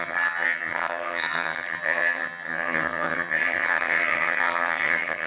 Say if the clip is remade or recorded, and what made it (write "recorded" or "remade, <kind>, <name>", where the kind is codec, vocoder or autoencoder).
remade, vocoder, HiFi-GAN